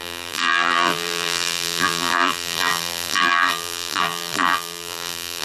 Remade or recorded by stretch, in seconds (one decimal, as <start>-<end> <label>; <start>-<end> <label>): 0.0-5.4 remade